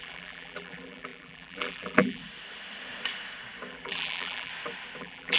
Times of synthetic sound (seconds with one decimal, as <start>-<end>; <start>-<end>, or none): 0.0-2.2; 3.7-4.5; 5.0-5.4